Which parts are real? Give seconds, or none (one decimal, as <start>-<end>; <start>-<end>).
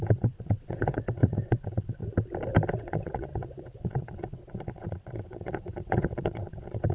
2.0-2.7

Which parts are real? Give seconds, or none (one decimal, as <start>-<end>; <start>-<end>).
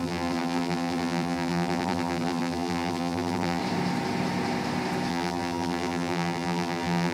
3.6-5.1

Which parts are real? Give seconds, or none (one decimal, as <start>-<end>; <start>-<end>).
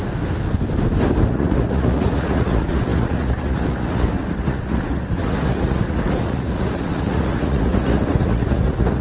0.0-1.3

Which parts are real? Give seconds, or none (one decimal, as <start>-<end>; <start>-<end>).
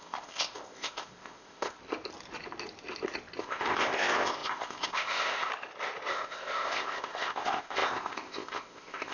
1.8-3.4; 5.5-6.1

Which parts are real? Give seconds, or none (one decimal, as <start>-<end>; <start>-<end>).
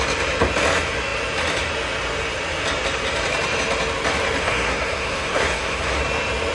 0.0-4.4; 6.0-6.5